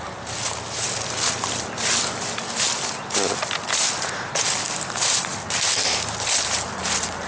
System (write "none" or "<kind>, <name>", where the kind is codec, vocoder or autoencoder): none